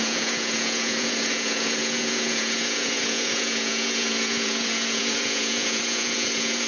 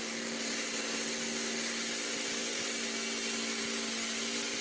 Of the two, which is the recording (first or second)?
second